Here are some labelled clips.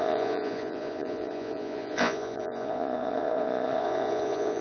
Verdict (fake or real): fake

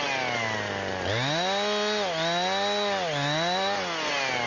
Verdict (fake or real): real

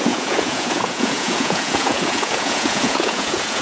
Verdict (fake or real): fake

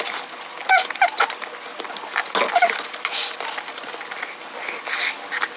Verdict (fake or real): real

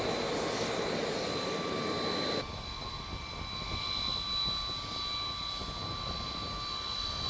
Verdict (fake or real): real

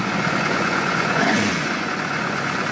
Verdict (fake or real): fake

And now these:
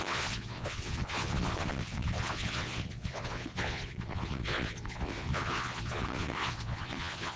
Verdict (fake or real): fake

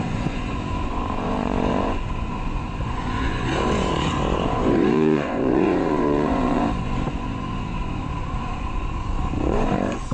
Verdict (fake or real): fake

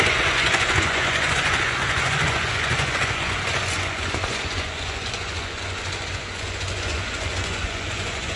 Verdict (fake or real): fake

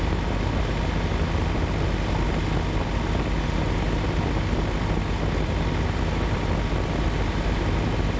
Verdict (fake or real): real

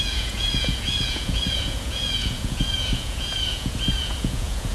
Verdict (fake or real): fake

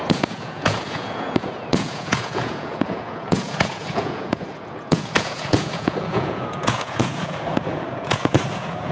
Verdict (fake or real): fake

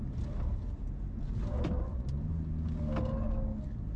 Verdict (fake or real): real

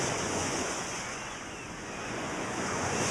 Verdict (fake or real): fake